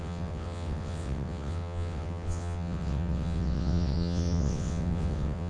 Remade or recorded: remade